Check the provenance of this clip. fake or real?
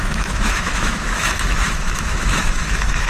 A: fake